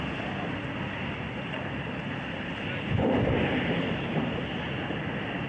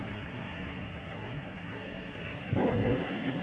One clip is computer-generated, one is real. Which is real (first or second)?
first